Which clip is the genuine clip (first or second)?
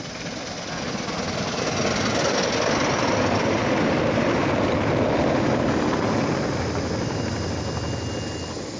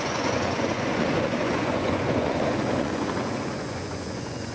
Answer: first